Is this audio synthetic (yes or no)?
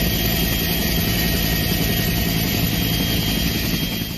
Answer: no